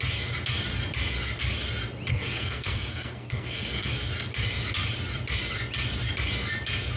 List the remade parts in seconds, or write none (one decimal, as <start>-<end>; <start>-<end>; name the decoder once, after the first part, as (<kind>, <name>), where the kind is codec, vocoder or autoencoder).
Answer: 2.1-3.9 (codec, SNAC)